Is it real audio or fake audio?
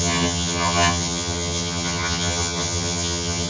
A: fake